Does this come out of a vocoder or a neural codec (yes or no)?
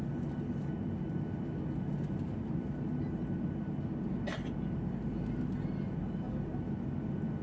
no